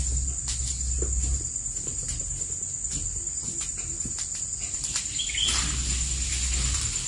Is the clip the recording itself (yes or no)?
yes